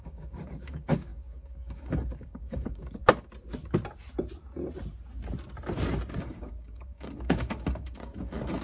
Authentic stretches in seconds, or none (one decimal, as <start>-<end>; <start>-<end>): 3.0-6.2